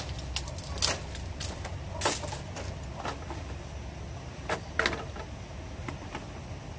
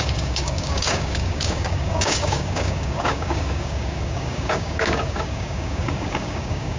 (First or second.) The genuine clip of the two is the first